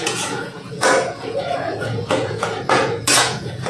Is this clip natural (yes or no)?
no